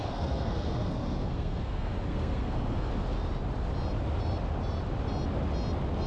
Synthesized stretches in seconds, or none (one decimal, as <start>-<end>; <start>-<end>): 0.0-2.9